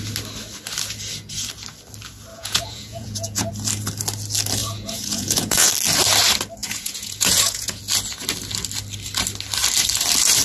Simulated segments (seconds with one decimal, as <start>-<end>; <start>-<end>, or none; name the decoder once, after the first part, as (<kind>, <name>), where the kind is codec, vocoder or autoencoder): 2.3-3.5 (vocoder, Vocos); 4.6-5.7; 6.6-7.8